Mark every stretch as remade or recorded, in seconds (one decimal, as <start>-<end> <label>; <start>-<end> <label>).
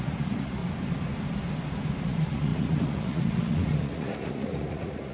0.0-0.6 remade; 0.6-2.0 recorded; 2.0-5.1 remade